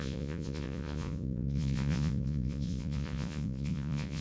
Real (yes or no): no